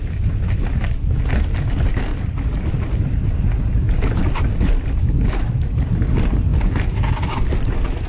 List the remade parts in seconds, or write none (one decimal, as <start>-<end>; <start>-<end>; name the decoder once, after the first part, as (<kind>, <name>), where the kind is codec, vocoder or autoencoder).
none

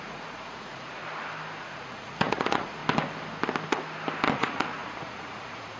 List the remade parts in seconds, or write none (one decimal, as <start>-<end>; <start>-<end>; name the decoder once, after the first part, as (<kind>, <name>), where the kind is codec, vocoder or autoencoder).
0.0-1.0 (vocoder, Vocos); 1.6-2.8; 4.3-5.8

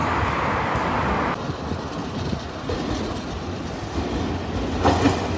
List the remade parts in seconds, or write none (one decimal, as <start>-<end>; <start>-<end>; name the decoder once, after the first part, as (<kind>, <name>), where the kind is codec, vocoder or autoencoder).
2.0-4.0 (vocoder, Vocos)

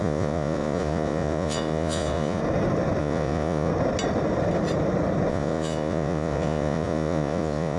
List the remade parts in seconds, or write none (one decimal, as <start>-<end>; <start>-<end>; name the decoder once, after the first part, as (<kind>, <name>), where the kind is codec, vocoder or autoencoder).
0.0-2.4 (vocoder, Vocos); 3.0-3.7; 5.3-7.8

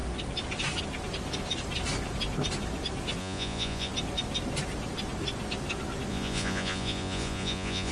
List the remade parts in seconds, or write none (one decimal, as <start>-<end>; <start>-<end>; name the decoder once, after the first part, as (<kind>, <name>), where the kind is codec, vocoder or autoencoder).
3.2-3.9 (vocoder, Vocos); 6.1-7.9

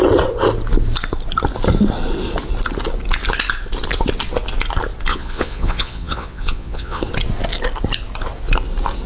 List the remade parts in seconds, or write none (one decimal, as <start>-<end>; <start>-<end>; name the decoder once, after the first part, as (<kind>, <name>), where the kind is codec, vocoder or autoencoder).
5.1-7.0 (vocoder, Vocos)

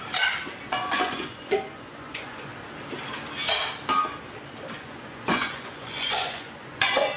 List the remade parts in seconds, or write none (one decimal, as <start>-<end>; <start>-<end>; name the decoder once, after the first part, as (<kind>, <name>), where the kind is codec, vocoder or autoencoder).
0.6-2.5 (vocoder, Vocos); 4.8-7.2

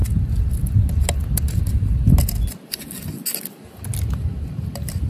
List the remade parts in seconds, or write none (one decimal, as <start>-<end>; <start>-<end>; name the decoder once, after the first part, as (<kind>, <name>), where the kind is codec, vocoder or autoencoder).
none